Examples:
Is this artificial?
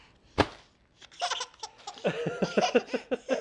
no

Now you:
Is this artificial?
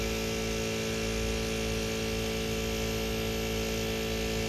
no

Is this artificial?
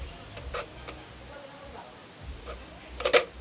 no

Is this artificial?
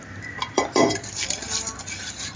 yes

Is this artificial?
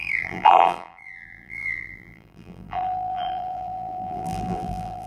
yes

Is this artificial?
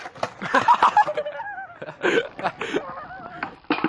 no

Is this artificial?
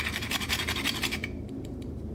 yes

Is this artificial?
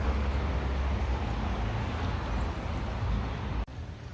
no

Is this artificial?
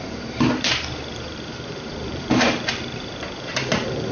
yes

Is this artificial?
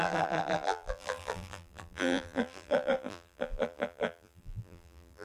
yes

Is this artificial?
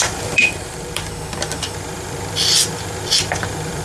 yes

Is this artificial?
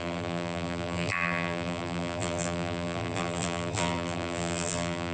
yes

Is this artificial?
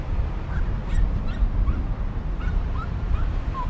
no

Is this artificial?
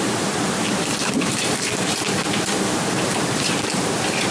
yes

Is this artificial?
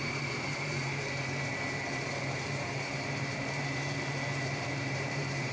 yes